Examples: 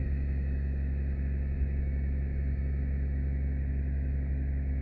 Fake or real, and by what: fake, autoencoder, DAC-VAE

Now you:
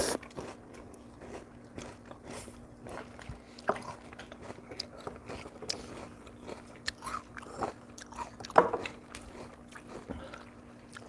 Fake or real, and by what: real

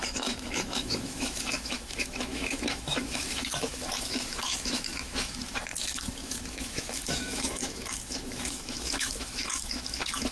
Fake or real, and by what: fake, autoencoder, DAC-VAE